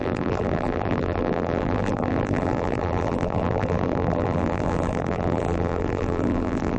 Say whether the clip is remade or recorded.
remade